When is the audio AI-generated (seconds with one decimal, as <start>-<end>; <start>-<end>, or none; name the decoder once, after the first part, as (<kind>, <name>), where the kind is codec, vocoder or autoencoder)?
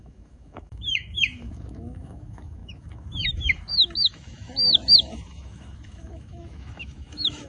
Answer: 0.0-7.5 (autoencoder, DAC-VAE)